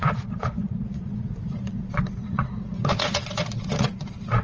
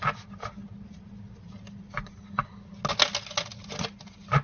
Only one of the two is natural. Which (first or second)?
second